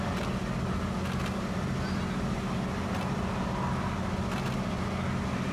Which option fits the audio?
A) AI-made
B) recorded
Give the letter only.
B